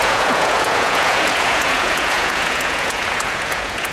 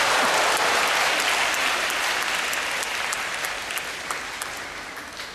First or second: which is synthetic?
first